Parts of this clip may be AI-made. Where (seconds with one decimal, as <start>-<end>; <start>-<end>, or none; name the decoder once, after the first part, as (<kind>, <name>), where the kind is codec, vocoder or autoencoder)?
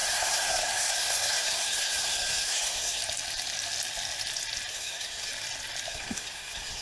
0.0-3.0 (codec, SNAC); 4.7-5.3; 5.9-6.8